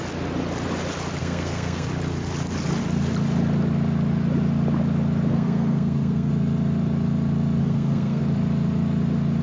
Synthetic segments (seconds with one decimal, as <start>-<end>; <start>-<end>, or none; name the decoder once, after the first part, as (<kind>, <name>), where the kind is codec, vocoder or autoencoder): 1.2-1.9 (codec, SNAC); 5.3-6.3; 7.6-8.2